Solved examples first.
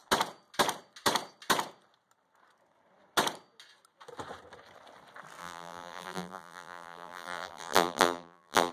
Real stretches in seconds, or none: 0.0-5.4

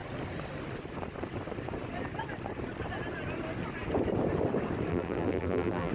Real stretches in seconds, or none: 0.0-4.9

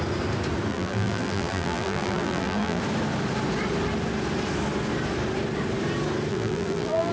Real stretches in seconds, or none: 0.0-0.7; 2.8-6.3

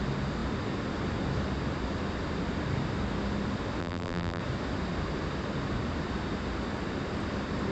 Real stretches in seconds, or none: 0.0-3.8; 4.4-7.7

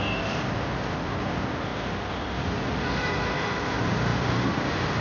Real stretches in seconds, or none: 0.0-4.1

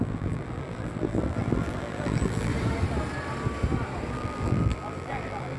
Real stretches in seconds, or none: 2.5-4.1

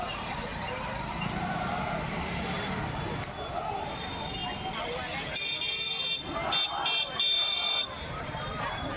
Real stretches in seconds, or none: 0.5-1.4; 4.4-8.6